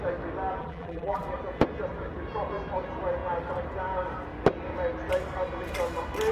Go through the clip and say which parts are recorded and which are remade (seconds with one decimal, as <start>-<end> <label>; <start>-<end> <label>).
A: 0.0-0.6 recorded; 0.6-1.2 remade; 1.2-6.3 recorded